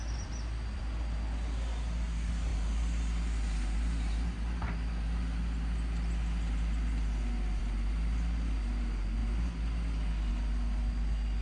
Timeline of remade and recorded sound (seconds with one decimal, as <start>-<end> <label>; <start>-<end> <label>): 0.0-0.8 remade; 0.8-11.4 recorded